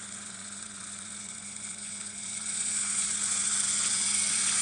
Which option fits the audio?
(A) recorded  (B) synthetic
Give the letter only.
B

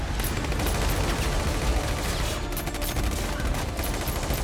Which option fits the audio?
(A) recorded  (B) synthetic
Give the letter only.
A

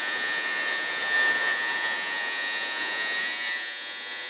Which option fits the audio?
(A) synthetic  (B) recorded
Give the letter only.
A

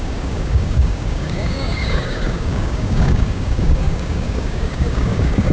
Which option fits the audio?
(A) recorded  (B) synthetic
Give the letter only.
B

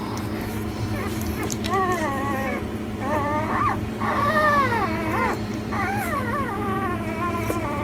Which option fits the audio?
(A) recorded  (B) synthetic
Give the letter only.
B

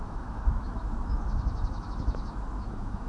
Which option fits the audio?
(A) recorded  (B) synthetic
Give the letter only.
B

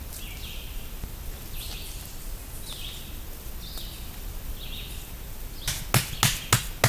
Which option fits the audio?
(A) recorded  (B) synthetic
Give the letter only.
A